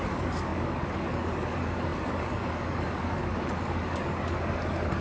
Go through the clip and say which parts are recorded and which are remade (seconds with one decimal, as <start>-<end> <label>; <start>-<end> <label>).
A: 0.0-5.0 remade